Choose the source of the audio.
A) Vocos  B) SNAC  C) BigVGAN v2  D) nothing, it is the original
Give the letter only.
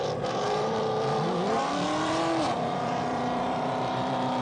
C